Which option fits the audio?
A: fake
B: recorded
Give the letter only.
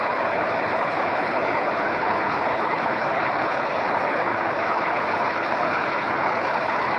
A